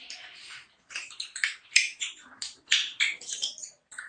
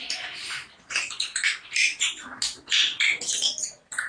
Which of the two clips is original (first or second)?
second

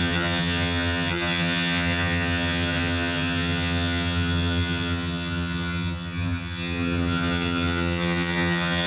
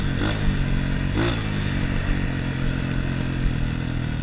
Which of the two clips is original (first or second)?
second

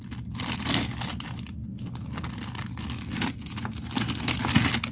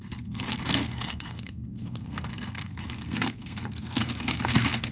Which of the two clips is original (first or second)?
first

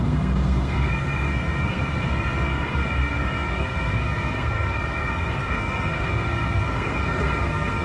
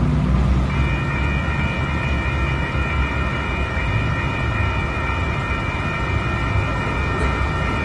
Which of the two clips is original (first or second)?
second